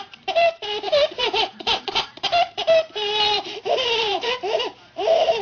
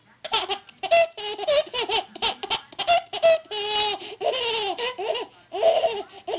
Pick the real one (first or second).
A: second